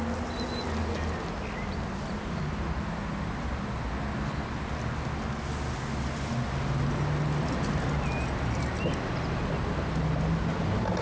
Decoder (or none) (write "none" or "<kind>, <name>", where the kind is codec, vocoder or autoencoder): none